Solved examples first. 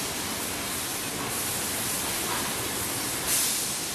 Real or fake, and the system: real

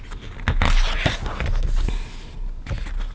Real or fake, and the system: real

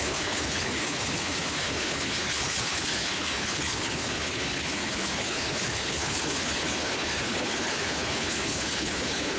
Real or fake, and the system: fake, codec, HILCodec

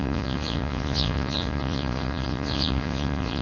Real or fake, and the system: fake, vocoder, Vocos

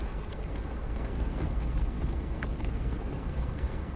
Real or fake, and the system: fake, codec, SNAC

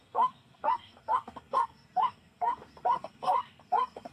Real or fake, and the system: fake, codec, SNAC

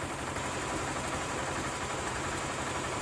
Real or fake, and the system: fake, vocoder, BigVGAN v2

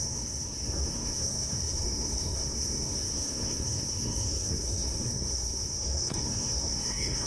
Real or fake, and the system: fake, codec, SNAC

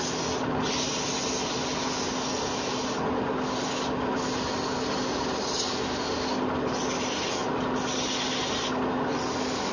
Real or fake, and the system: real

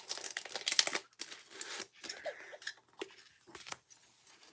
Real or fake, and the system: real